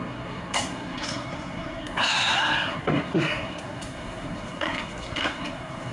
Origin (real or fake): fake